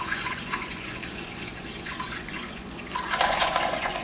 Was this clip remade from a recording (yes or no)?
yes